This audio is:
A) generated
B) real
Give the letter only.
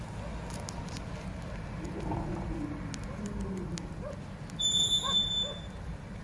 B